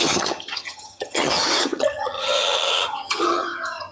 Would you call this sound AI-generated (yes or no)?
yes